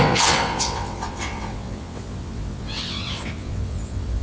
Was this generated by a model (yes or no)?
yes